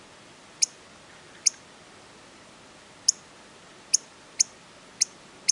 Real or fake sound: real